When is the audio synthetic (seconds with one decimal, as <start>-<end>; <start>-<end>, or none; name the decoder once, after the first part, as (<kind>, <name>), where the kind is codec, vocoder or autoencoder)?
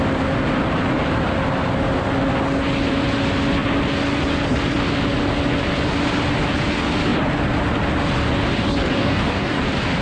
8.8-9.6 (codec, DAC)